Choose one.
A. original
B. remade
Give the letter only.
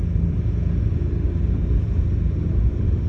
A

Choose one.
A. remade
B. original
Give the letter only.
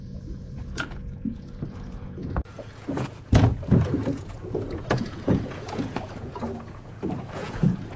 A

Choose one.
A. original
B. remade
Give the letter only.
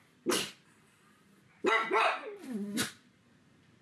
A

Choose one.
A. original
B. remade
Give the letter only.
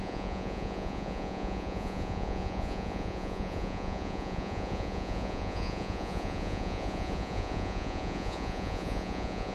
B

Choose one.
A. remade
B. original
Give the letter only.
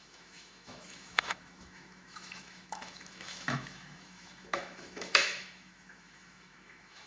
A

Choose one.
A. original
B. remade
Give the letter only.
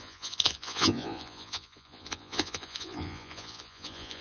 B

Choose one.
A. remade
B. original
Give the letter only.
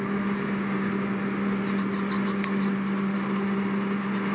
B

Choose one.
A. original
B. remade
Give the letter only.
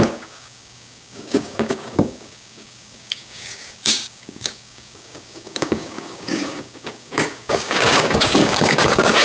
B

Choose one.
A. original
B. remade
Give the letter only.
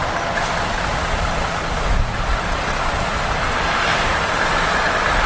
A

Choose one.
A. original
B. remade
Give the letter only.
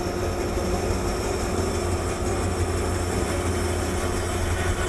A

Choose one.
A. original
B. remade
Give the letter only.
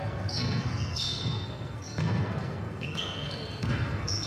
B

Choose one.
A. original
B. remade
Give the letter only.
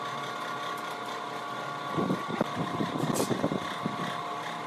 A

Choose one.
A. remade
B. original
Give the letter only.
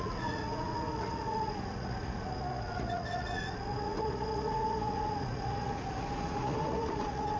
A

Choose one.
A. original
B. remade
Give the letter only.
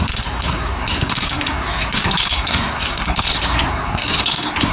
B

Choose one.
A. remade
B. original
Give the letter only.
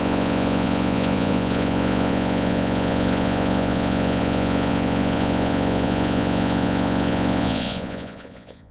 A